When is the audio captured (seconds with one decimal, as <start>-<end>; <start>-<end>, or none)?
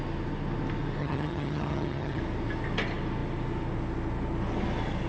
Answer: 0.0-1.0; 2.2-5.1